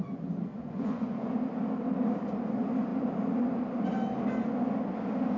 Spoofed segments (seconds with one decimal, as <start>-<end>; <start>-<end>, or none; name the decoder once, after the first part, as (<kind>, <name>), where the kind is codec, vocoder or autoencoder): 0.5-1.3 (vocoder, Vocos)